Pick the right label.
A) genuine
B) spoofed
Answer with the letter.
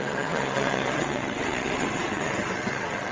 B